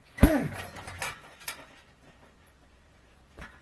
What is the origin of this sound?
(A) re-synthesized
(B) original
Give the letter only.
A